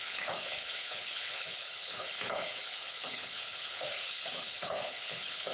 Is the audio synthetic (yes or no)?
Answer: yes